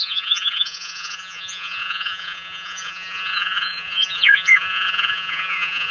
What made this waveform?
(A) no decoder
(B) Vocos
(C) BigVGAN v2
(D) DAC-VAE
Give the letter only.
B